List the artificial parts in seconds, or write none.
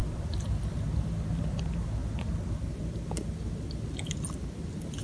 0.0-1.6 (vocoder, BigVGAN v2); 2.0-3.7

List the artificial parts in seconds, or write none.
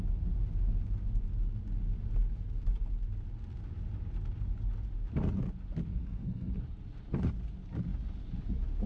5.9-6.5 (codec, SNAC)